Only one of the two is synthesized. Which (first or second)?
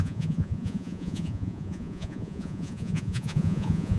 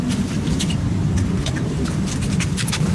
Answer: first